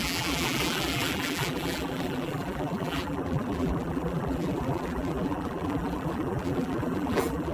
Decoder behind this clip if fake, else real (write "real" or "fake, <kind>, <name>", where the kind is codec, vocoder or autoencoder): fake, vocoder, BigVGAN v2